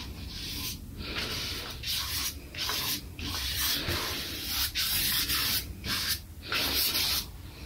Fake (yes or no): no